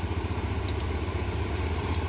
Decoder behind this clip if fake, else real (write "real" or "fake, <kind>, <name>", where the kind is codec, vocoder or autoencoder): fake, vocoder, BigVGAN v2